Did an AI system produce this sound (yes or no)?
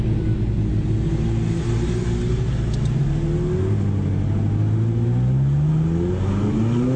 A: no